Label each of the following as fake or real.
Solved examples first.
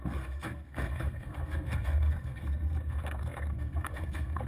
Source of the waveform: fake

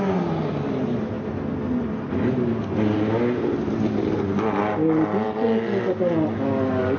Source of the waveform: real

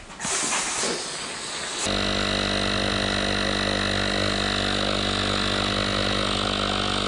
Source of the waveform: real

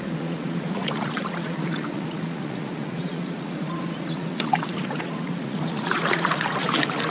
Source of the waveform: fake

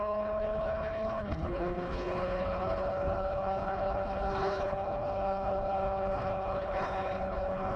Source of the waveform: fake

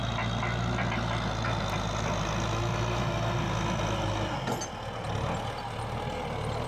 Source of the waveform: real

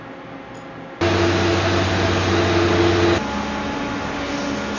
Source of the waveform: real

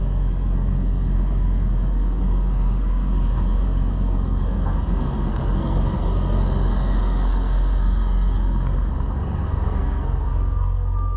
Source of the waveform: fake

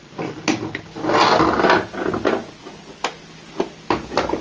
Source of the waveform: real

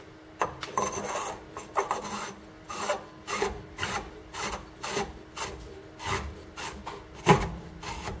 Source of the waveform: real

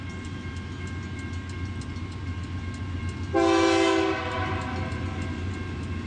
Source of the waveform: real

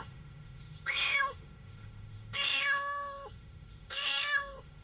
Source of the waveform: fake